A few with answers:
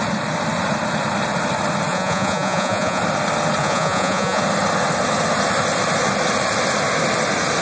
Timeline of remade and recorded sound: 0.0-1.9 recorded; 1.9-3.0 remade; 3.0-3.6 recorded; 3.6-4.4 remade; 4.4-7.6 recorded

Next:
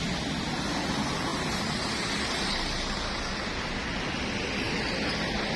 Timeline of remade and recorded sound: 0.0-5.6 recorded